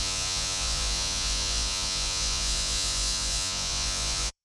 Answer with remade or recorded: remade